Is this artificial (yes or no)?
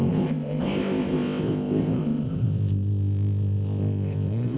yes